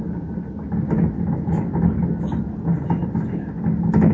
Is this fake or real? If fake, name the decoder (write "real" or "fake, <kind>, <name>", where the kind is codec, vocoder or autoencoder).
real